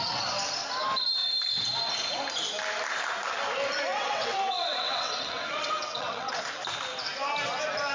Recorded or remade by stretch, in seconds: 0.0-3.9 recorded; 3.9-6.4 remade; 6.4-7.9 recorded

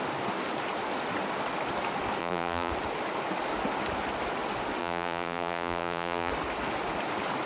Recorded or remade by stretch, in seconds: 0.0-2.2 recorded; 2.2-2.7 remade; 2.7-4.8 recorded; 4.8-6.3 remade; 6.3-7.5 recorded

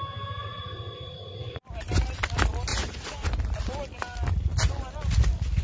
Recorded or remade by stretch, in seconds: 0.0-0.4 recorded; 0.4-1.6 remade; 1.6-2.7 recorded; 2.7-3.3 remade; 3.3-5.6 recorded